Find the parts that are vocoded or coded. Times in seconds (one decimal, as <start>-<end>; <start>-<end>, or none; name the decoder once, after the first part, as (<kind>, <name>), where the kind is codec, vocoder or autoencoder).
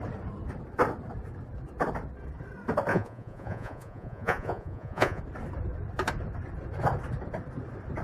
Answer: 2.9-5.2 (vocoder, Vocos)